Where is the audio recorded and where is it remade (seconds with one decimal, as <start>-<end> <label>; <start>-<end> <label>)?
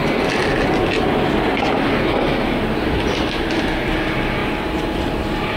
0.0-4.4 recorded; 4.4-5.6 remade